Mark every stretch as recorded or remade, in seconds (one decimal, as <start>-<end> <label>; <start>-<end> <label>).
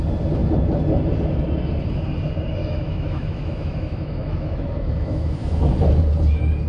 0.0-2.6 recorded; 2.6-5.6 remade; 5.6-6.7 recorded